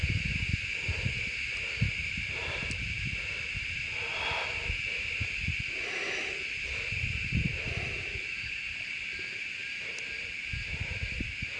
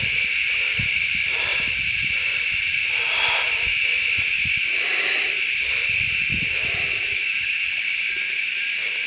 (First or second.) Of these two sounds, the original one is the first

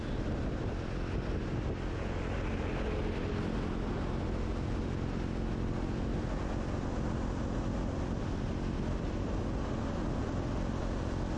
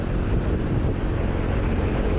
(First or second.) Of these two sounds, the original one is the first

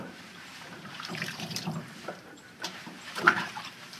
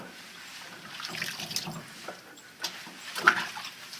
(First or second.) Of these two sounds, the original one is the second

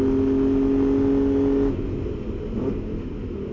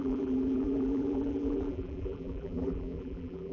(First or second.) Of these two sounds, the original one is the first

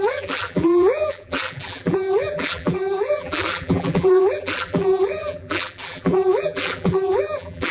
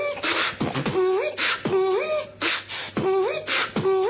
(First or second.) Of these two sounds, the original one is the second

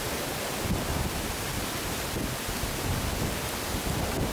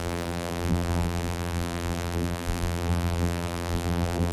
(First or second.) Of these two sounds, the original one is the first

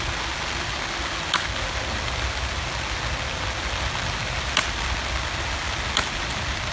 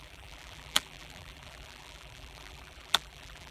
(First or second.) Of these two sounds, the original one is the first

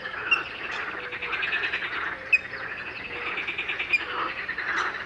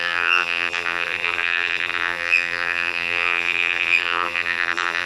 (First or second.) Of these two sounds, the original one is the first